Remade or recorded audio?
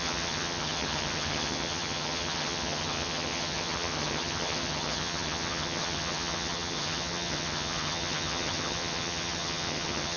remade